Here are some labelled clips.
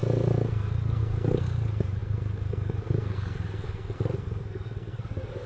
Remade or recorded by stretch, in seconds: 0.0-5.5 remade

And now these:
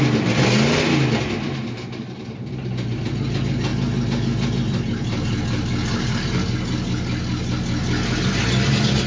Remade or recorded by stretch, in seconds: 0.0-9.1 recorded

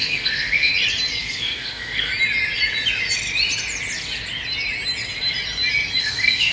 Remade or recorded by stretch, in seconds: 0.0-0.7 remade; 0.7-1.2 recorded; 1.2-2.1 remade; 2.1-6.0 recorded; 6.0-6.5 remade